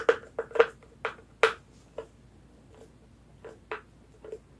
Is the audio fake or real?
real